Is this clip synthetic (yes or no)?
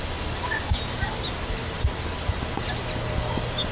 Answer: no